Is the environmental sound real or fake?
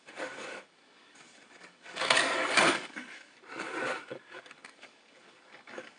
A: fake